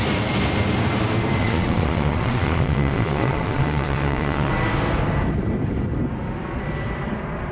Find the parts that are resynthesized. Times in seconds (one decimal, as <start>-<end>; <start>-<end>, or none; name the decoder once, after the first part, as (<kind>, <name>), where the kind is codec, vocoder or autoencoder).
1.4-4.5 (vocoder, Vocos)